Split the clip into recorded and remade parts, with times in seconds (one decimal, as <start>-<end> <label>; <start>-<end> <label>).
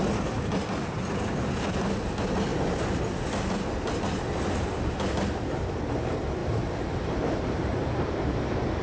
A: 0.0-6.4 recorded; 6.4-8.4 remade; 8.4-8.8 recorded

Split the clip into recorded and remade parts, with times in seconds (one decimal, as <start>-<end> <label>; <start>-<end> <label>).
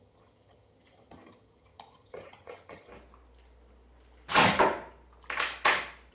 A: 0.0-2.9 remade; 2.9-6.1 recorded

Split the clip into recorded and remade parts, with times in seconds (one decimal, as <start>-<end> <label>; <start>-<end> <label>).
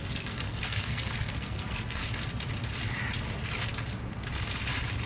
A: 0.0-2.0 remade; 2.0-5.1 recorded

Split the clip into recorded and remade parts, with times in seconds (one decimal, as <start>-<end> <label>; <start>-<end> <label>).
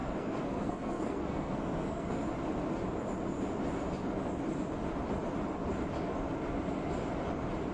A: 0.0-2.2 remade; 2.2-7.7 recorded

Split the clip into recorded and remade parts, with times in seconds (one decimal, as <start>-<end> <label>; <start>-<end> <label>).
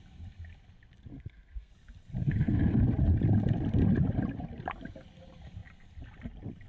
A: 0.0-1.1 recorded; 1.1-1.7 remade; 1.7-2.2 recorded; 2.2-2.8 remade; 2.8-6.7 recorded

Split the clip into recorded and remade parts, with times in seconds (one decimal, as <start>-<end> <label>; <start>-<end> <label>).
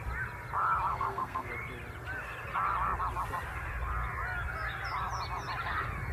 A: 0.0-0.9 recorded; 0.9-1.5 remade; 1.5-6.1 recorded